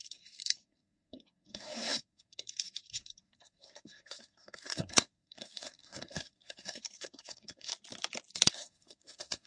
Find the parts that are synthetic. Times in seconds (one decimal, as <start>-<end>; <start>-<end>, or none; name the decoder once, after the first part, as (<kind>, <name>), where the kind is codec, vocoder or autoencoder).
0.0-7.7 (codec, SNAC); 8.5-9.5